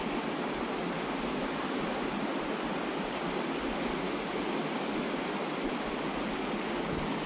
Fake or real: real